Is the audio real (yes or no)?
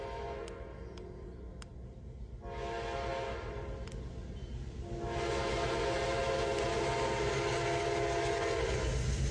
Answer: yes